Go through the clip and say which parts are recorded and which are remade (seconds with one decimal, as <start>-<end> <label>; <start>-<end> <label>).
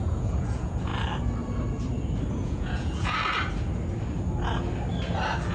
0.0-0.9 remade; 0.9-2.3 recorded; 2.3-3.2 remade; 3.2-5.5 recorded